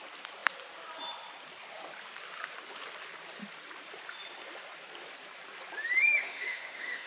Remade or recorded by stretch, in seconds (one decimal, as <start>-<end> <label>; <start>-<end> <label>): 0.0-6.0 recorded; 6.0-7.1 remade